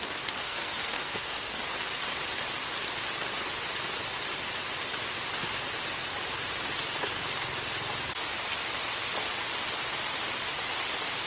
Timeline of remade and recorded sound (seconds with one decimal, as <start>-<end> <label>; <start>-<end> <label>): 0.0-0.4 recorded; 0.4-1.6 remade; 1.6-11.3 recorded